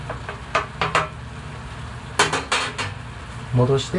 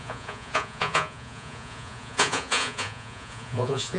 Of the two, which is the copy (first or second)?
second